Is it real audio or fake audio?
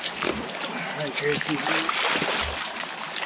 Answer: real